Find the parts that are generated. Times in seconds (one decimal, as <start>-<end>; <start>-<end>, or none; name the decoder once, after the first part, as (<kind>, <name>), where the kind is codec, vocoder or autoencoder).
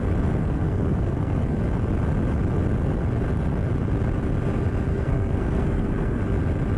0.4-1.6 (codec, SNAC); 4.9-6.2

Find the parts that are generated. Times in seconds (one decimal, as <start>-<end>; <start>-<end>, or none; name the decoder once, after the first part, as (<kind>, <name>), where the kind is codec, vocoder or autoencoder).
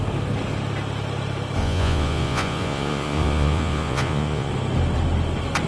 1.6-4.5 (vocoder, Vocos)